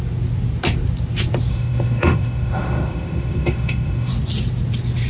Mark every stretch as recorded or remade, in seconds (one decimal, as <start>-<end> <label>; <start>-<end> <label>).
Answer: 0.0-1.5 recorded; 1.5-4.1 remade; 4.1-5.1 recorded

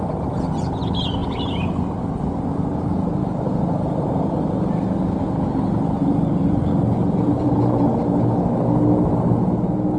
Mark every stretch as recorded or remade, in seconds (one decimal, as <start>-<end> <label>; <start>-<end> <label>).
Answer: 0.0-3.2 recorded; 3.2-7.7 remade; 7.7-10.0 recorded

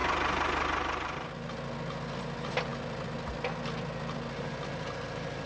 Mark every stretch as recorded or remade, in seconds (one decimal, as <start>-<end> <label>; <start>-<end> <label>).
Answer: 0.0-1.3 remade; 1.3-2.7 recorded; 2.7-4.5 remade; 4.5-5.5 recorded